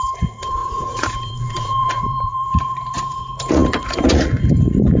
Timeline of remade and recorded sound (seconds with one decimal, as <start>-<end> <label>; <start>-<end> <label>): 0.0-5.0 remade